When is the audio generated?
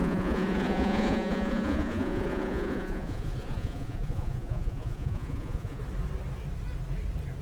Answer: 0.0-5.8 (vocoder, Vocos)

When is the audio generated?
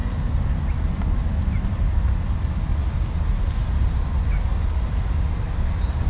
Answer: none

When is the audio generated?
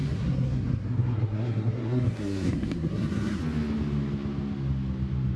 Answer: 0.0-3.4 (codec, SNAC)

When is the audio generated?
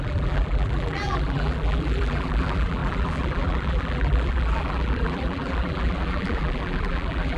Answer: 0.0-7.4 (vocoder, BigVGAN v2)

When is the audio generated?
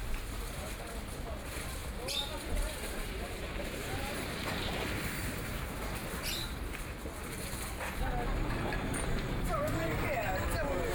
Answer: 0.0-1.8 (vocoder, BigVGAN v2); 2.3-6.0; 8.5-10.9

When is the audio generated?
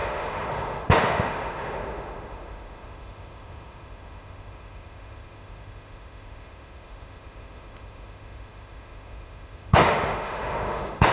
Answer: 0.0-11.1 (autoencoder, DAC-VAE)